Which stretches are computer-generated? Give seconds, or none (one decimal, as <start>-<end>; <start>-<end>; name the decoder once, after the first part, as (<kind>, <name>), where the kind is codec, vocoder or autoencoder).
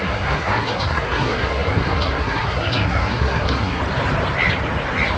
0.0-3.8 (codec, SNAC)